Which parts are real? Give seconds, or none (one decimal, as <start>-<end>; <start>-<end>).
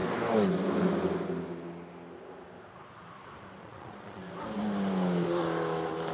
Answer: 0.0-3.6; 4.2-6.1